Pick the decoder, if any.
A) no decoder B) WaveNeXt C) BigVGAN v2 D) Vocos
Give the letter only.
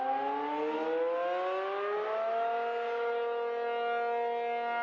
A